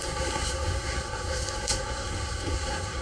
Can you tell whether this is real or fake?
fake